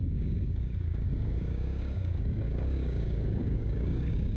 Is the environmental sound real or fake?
fake